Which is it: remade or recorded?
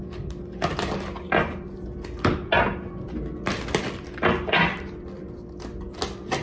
recorded